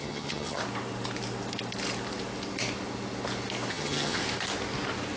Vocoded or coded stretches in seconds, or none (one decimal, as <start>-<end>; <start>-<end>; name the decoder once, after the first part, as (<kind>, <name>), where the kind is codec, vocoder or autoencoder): 0.0-0.6 (vocoder, HiFi-GAN); 3.7-4.2